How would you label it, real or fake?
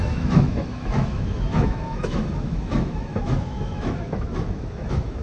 fake